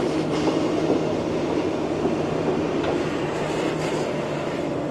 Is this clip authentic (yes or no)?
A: no